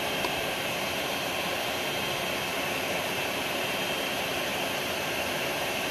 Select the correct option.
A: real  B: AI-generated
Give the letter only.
B